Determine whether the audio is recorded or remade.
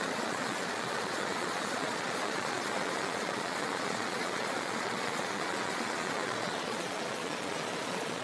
remade